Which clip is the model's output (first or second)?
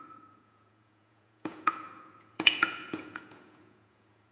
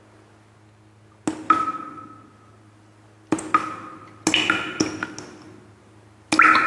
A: first